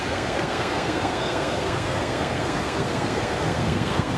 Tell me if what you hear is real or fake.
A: fake